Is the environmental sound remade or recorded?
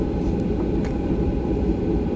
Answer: recorded